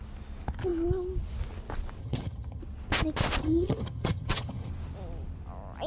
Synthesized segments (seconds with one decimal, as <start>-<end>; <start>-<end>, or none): 2.0-2.6; 3.4-4.7